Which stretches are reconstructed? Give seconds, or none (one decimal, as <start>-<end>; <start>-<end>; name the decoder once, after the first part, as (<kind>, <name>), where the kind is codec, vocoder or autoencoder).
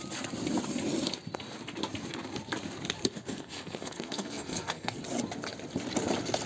3.0-5.0 (codec, SNAC)